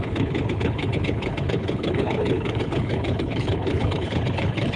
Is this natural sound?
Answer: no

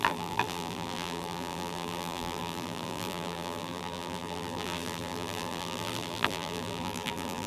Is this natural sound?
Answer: no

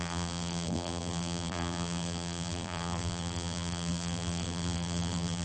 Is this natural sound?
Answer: no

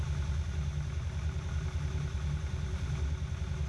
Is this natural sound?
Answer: yes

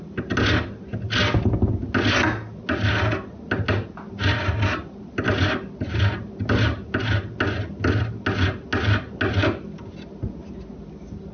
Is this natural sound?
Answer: yes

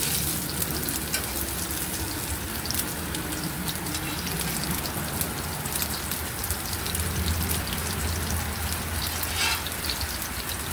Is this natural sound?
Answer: yes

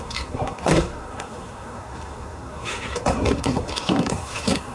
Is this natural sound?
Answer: no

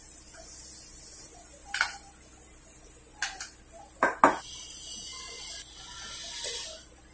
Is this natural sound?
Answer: yes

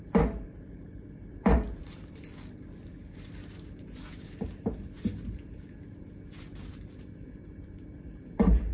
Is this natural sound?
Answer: no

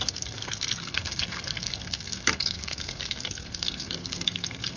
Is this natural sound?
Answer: no